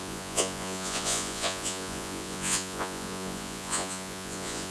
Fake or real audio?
fake